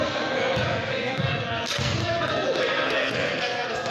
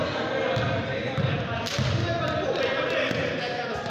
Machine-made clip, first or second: first